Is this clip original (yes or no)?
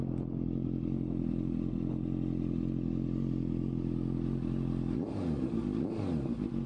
yes